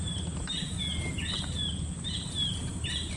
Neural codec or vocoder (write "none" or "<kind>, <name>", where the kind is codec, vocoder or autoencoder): none